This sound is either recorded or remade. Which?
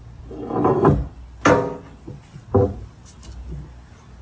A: recorded